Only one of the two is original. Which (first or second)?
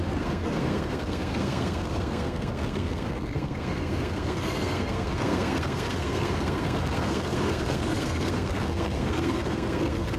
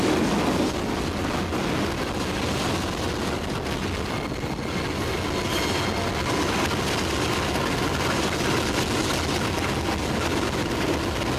second